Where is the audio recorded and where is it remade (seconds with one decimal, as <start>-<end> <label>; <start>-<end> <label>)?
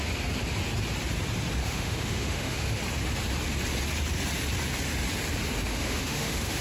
0.0-1.6 recorded; 1.6-2.8 remade; 2.8-5.7 recorded; 5.7-6.6 remade